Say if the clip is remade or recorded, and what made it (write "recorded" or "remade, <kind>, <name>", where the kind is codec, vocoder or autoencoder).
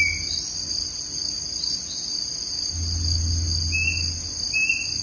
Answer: recorded